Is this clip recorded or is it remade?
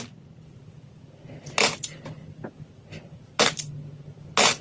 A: recorded